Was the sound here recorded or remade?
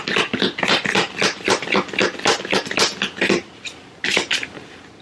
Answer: recorded